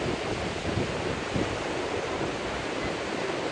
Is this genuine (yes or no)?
yes